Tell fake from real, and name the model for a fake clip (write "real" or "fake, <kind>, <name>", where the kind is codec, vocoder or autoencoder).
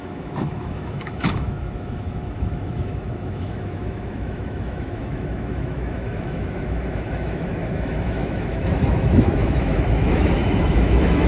fake, autoencoder, DAC-VAE